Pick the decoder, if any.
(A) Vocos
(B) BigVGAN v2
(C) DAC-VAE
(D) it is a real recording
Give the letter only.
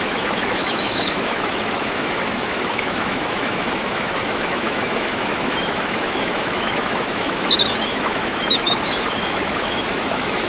C